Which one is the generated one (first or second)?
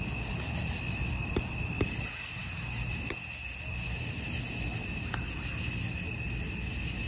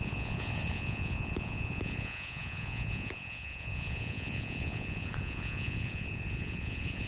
second